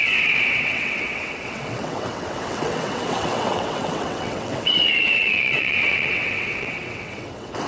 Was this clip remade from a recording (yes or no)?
yes